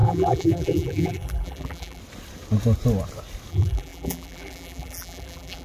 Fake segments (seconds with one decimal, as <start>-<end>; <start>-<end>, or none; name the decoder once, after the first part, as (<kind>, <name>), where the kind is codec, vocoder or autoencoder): 0.0-2.0 (vocoder, BigVGAN v2); 3.5-5.6